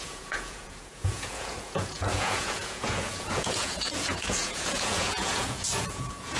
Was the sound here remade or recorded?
remade